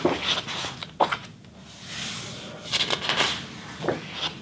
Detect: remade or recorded recorded